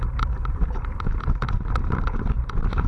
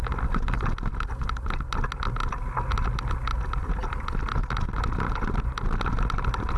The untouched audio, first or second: second